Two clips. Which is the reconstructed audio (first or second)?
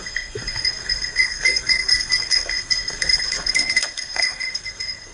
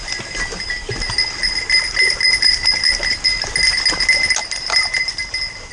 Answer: first